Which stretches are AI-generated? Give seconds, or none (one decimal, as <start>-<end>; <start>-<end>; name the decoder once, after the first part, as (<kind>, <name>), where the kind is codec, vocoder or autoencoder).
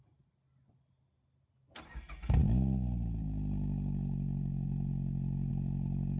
none